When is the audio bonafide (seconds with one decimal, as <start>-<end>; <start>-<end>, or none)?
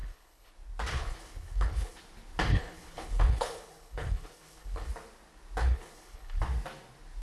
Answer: 0.5-0.9; 2.0-2.5; 4.9-5.6; 6.4-7.2